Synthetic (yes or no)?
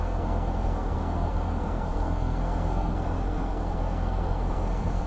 yes